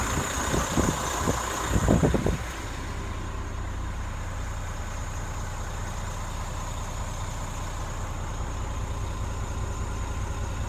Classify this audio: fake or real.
real